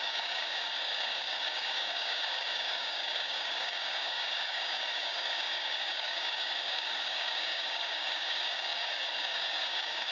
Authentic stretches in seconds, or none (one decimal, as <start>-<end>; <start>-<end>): none